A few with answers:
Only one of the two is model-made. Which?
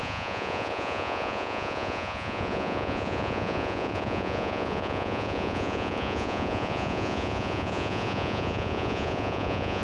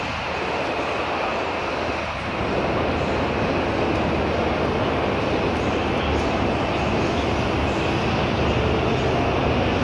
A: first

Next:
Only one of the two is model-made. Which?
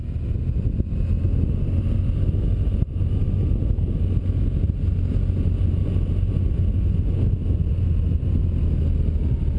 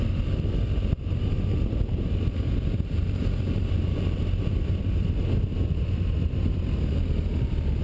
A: second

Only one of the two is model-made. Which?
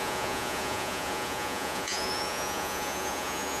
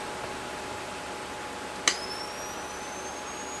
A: first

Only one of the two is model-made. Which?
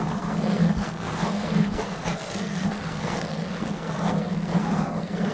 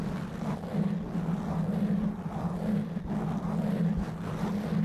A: first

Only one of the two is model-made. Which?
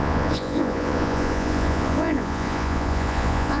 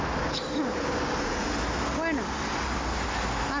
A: first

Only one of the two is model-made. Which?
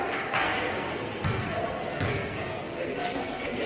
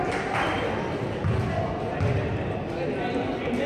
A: first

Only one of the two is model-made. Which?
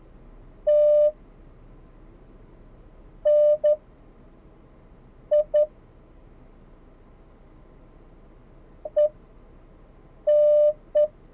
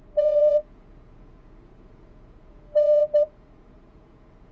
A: second